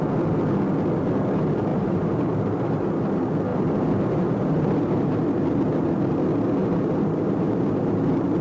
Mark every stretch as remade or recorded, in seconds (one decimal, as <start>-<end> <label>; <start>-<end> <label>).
0.0-1.7 recorded; 1.7-2.3 remade; 2.3-3.5 recorded; 3.5-5.9 remade; 5.9-6.6 recorded; 6.6-8.4 remade